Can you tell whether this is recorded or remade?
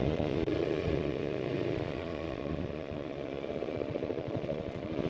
remade